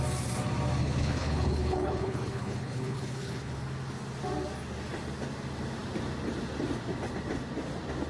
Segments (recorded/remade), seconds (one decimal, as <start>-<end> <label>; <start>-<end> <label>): 0.0-0.8 recorded; 0.8-3.6 remade; 3.6-8.1 recorded